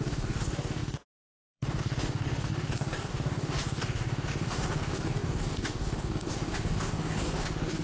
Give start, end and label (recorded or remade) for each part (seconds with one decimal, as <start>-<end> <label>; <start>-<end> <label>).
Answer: 0.0-7.8 remade